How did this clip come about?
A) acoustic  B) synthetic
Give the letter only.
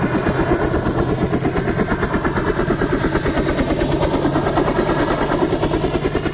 A